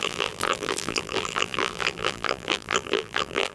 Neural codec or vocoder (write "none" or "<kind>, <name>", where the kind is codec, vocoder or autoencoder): vocoder, BigVGAN v2